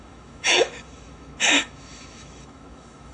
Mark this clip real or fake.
fake